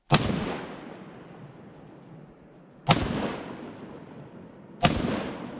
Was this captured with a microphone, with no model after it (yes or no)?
yes